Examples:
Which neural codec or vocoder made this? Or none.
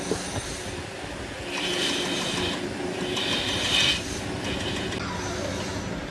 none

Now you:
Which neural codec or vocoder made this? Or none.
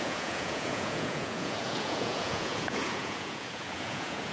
vocoder, Vocos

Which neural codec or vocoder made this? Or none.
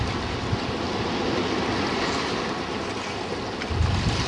none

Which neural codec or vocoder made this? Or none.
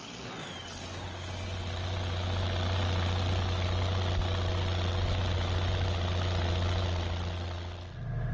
none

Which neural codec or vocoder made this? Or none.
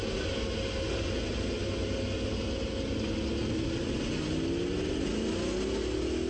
none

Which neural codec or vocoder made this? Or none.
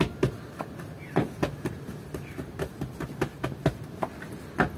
none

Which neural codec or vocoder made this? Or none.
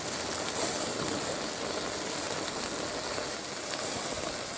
none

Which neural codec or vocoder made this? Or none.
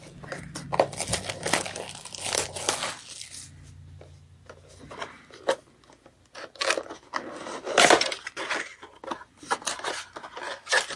none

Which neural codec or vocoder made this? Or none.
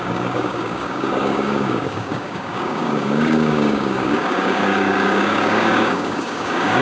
codec, DAC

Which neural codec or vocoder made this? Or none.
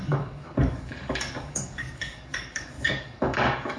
codec, DAC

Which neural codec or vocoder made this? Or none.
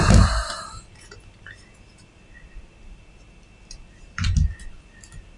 none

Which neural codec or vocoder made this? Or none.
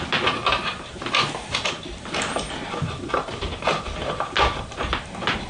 none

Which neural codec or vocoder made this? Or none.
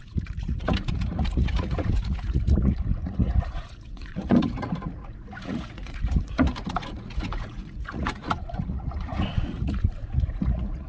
vocoder, Vocos